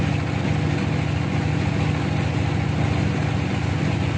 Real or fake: real